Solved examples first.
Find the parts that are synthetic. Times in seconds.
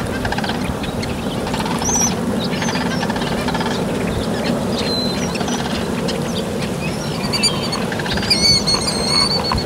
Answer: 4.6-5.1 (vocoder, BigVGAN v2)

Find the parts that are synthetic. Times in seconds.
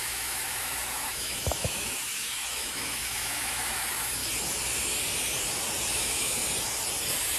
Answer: 0.0-4.2 (autoencoder, DAC-VAE); 5.9-6.4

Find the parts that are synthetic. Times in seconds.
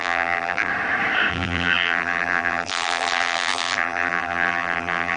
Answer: 0.0-0.7 (vocoder, BigVGAN v2); 1.3-5.2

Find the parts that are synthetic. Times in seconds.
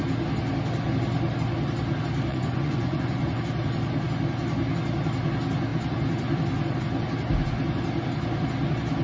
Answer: 2.3-3.4 (vocoder, Vocos)